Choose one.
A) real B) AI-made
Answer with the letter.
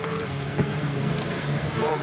B